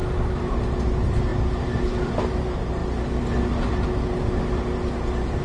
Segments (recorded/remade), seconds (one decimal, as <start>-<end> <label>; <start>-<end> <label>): 0.0-0.5 remade; 0.5-5.4 recorded